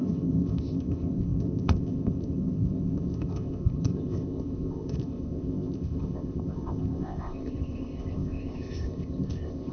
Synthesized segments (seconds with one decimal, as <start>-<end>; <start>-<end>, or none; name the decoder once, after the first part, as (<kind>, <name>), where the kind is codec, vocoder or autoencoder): 0.0-9.7 (codec, ZipCodec)

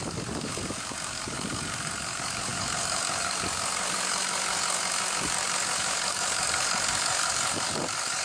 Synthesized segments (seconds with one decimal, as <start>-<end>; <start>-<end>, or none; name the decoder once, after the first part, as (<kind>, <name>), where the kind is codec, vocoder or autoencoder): 0.0-8.2 (codec, DAC)

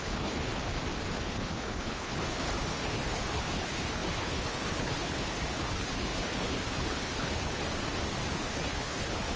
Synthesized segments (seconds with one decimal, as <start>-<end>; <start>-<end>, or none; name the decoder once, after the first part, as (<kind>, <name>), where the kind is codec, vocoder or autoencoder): 0.0-0.5 (codec, HILCodec); 1.2-7.6; 8.3-9.4

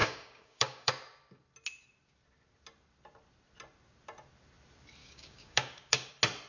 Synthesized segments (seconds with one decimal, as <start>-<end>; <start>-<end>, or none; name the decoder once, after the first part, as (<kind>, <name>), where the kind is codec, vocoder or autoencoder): 0.0-0.9 (codec, DAC); 5.0-6.1

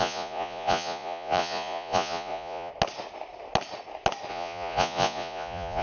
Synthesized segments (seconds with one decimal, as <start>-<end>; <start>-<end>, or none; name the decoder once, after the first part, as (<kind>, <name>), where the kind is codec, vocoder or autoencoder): 0.0-2.7 (vocoder, Vocos); 4.3-5.8

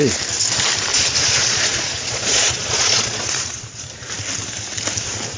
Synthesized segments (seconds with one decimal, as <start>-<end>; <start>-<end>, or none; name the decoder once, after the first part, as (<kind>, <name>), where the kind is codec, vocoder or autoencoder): 0.9-4.1 (vocoder, Vocos)